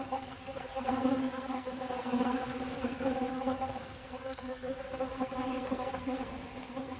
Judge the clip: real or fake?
fake